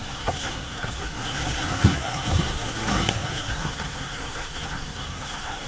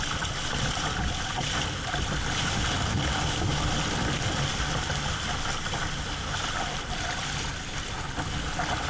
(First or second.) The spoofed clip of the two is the first